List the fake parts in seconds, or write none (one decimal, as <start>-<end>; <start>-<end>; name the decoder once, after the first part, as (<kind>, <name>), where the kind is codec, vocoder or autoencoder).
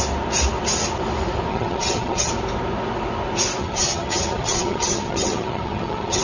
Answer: 1.5-2.3 (vocoder, HiFi-GAN); 3.6-6.2